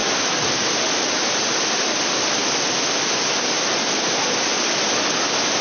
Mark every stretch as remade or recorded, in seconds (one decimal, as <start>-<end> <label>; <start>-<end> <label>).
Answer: 0.0-5.6 recorded